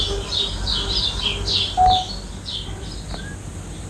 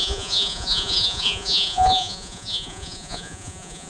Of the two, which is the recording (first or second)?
first